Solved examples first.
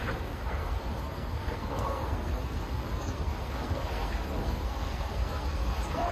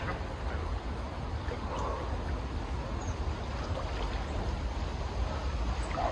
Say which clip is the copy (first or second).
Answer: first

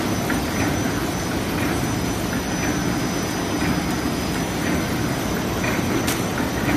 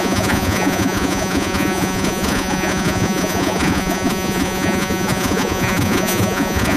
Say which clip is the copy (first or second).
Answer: second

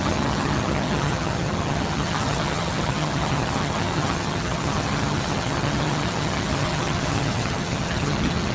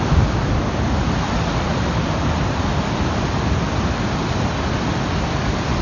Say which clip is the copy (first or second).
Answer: first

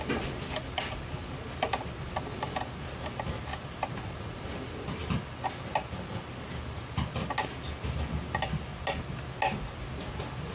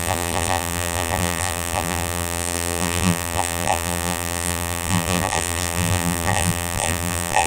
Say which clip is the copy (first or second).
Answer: second